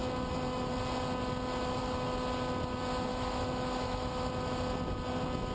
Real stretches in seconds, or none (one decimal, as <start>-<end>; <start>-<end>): 0.0-3.1; 4.3-5.5